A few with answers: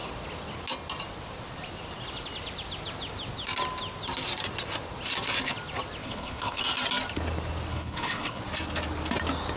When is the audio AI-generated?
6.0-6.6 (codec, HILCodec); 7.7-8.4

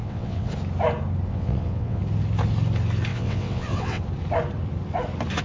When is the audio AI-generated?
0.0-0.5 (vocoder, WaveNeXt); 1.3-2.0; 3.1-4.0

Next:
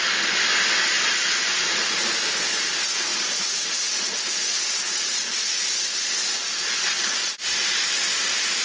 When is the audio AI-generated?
none

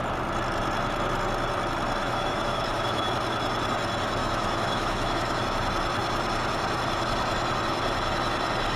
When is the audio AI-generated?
2.0-3.1 (autoencoder, DAC-VAE); 4.2-5.4

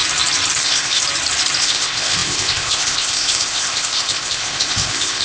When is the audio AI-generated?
0.6-1.0 (codec, ZipCodec); 1.6-5.2

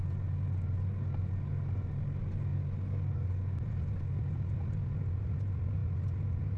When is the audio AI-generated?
none